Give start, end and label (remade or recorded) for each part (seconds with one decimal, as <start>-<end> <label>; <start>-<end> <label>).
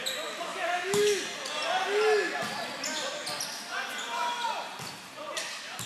0.0-0.5 recorded; 0.5-1.2 remade; 1.2-5.9 recorded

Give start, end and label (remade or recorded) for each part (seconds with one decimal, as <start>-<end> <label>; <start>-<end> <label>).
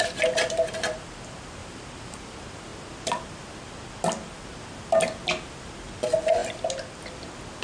0.0-1.6 recorded; 1.6-2.2 remade; 2.2-7.6 recorded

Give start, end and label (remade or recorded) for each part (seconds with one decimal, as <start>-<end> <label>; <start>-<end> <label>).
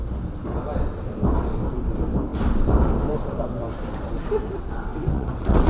0.0-4.9 recorded; 4.9-5.7 remade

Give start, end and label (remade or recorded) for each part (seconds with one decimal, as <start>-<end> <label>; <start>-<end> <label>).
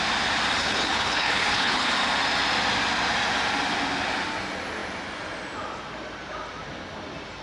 0.0-0.6 recorded; 0.6-1.9 remade; 1.9-7.4 recorded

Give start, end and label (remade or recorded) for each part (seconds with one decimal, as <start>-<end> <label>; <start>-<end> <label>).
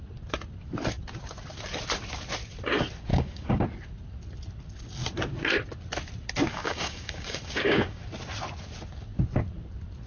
0.0-3.1 recorded; 3.1-3.6 remade; 3.6-6.5 recorded; 6.5-8.0 remade; 8.0-10.1 recorded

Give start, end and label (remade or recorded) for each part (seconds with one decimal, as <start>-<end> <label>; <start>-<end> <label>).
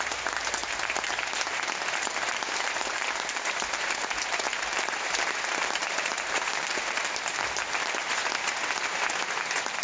0.0-8.2 remade; 8.2-9.3 recorded; 9.3-9.8 remade